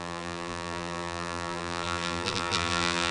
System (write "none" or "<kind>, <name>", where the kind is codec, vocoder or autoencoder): vocoder, BigVGAN v2